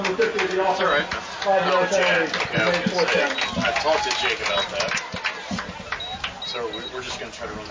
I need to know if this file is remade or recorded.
recorded